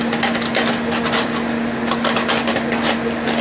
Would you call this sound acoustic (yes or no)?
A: yes